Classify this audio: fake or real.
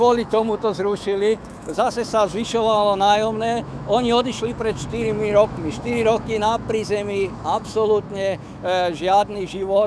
fake